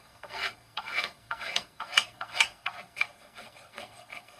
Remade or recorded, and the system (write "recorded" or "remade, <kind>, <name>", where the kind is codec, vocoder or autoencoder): remade, codec, SNAC